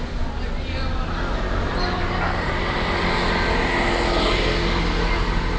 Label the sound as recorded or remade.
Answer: recorded